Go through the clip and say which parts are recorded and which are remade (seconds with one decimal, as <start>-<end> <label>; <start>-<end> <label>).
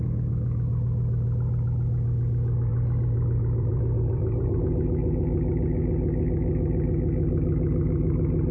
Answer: 0.0-2.7 recorded; 2.7-4.6 remade; 4.6-8.5 recorded